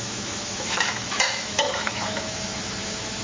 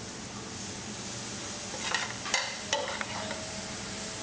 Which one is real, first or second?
second